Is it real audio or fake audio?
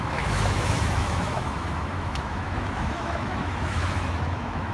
fake